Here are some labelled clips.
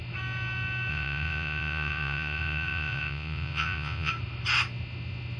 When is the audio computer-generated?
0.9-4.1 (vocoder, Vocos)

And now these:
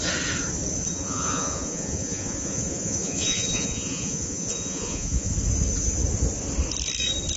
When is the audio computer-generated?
0.9-5.3 (vocoder, Vocos)

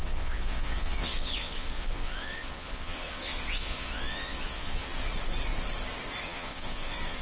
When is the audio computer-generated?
0.0-4.9 (vocoder, Vocos); 6.2-7.2

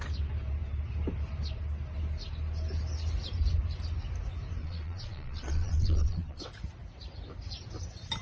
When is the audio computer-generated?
4.6-6.4 (vocoder, Vocos)

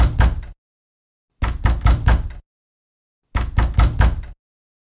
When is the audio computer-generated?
none

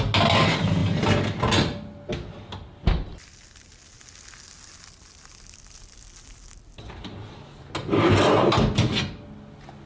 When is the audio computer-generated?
none